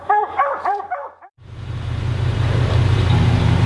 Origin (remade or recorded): remade